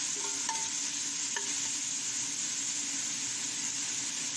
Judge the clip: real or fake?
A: real